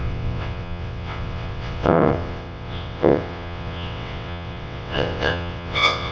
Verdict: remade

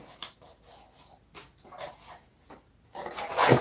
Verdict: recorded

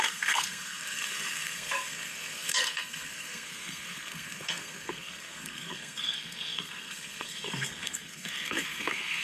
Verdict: remade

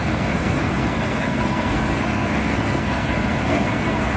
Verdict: remade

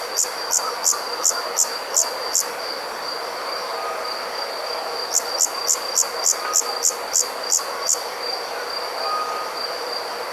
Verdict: recorded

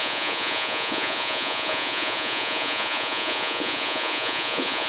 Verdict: remade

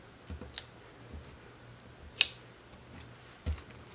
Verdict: recorded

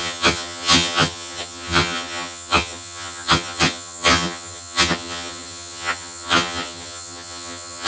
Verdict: remade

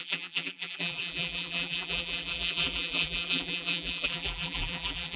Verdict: remade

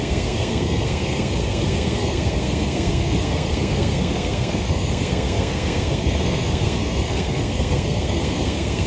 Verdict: remade